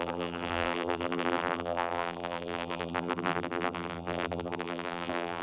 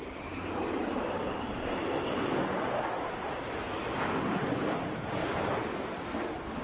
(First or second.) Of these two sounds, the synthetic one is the first